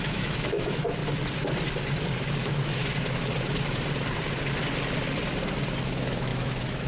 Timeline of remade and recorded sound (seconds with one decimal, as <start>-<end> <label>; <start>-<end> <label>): 0.0-1.0 remade; 1.0-2.3 recorded; 2.3-2.8 remade; 2.8-5.8 recorded; 5.8-6.9 remade